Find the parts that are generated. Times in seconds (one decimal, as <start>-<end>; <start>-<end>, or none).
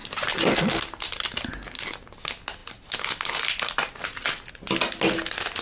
0.0-0.6